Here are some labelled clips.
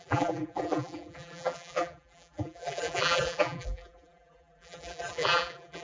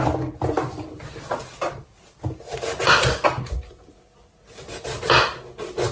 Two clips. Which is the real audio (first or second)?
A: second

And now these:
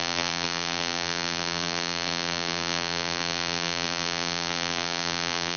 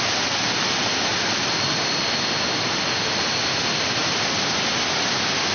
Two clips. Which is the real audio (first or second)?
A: second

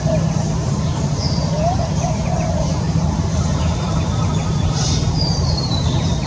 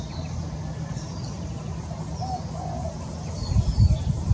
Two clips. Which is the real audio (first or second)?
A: second